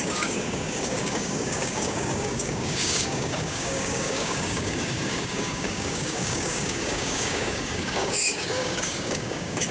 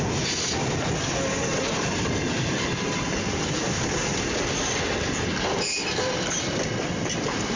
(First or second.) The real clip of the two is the second